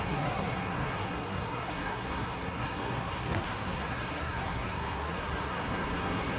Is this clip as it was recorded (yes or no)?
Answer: no